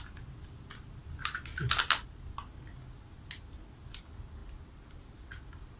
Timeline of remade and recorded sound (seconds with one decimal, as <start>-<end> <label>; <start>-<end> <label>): 0.0-5.8 recorded